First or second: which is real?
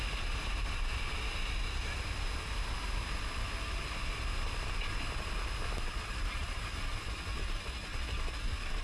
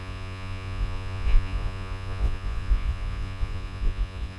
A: first